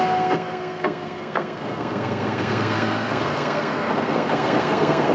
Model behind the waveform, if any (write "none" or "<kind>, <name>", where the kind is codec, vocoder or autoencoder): codec, SNAC